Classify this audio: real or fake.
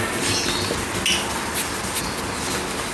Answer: real